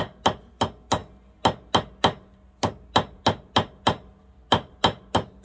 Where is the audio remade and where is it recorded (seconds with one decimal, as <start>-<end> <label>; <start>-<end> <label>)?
0.0-5.4 recorded